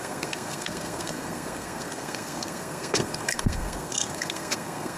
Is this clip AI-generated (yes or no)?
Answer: yes